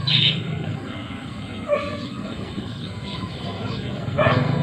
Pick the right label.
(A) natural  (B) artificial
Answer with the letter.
B